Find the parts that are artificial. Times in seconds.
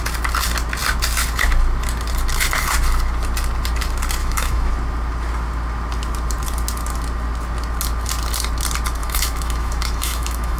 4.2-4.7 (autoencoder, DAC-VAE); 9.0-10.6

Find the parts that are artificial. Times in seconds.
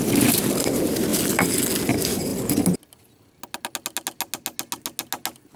none